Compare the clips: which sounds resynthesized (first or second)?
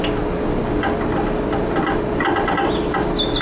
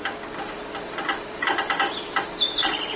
second